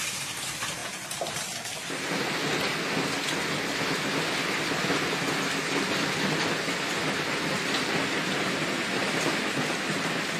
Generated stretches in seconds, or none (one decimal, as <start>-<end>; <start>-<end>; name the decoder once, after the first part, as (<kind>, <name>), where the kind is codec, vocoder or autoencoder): none